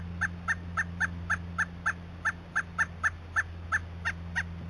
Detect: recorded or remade recorded